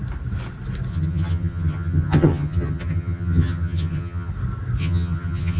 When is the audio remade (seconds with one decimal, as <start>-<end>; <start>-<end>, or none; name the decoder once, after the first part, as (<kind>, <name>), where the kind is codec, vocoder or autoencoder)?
0.9-4.3 (vocoder, HiFi-GAN); 4.8-5.6